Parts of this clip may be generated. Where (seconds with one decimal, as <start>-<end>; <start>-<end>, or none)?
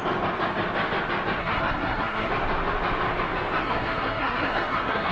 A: 1.4-2.3; 3.6-5.1